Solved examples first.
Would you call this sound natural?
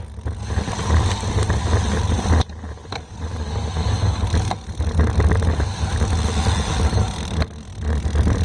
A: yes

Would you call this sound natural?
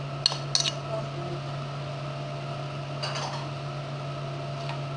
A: yes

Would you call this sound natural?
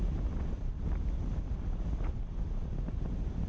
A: yes